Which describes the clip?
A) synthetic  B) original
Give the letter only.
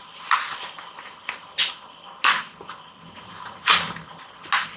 B